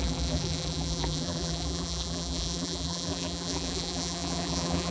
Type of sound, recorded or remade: remade